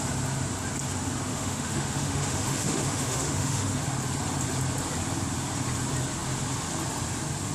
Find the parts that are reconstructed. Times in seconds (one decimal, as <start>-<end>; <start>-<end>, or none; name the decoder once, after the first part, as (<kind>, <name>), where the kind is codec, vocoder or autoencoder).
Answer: 1.3-3.8 (autoencoder, DAC-VAE)